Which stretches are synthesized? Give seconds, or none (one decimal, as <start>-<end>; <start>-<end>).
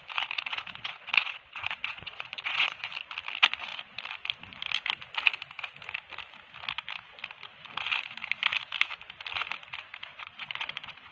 0.5-2.9; 10.1-11.1